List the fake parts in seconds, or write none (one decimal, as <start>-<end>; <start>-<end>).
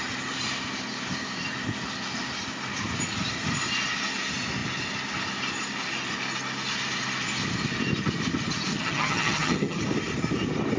8.7-9.8